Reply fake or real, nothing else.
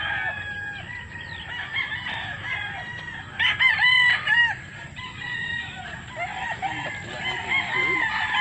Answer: real